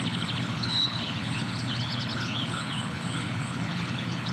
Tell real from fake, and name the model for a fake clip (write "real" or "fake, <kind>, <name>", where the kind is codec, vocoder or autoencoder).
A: fake, codec, HILCodec